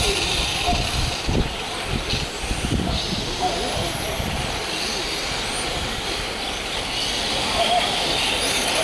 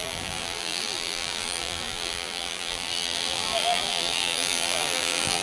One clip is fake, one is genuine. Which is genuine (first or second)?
first